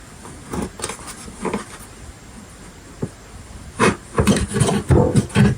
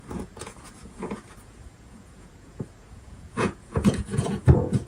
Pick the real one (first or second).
first